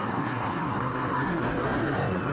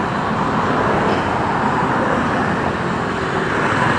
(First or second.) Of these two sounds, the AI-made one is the first